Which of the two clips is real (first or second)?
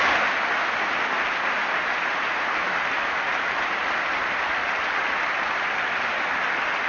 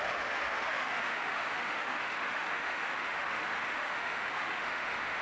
first